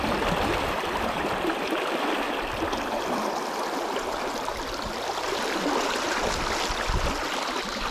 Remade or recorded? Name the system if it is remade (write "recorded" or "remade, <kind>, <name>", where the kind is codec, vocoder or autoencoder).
recorded